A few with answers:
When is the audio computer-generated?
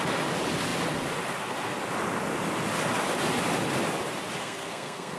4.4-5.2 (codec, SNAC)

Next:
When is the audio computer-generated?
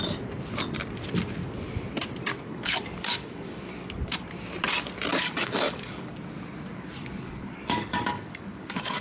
2.3-4.2 (codec, DAC); 5.1-6.1; 6.7-9.0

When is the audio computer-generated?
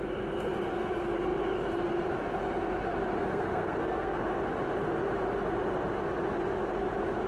3.3-4.2 (codec, SNAC)